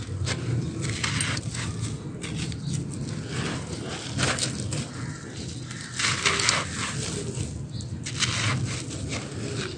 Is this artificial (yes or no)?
no